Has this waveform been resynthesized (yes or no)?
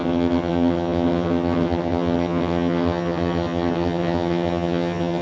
yes